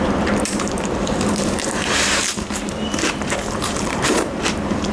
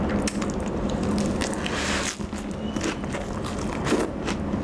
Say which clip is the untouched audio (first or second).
second